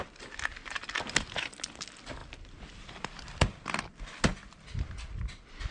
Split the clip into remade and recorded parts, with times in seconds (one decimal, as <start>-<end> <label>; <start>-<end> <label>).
0.0-5.7 recorded